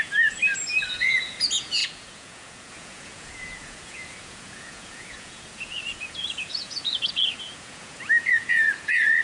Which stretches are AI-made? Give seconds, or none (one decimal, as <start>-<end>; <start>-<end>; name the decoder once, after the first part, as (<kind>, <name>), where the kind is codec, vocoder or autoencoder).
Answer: 0.0-0.4 (vocoder, Vocos); 0.9-9.2